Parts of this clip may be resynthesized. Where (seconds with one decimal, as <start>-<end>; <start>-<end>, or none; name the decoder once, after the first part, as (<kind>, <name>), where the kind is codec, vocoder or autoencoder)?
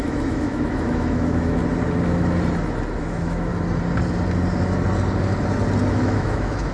0.0-1.6 (autoencoder, DAC-VAE); 3.0-3.5; 5.9-6.7